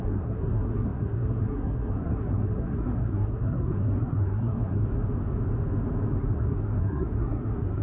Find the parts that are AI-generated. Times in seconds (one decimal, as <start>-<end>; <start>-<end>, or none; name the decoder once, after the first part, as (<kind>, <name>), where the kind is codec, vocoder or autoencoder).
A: 0.0-4.8 (codec, SNAC); 6.2-7.8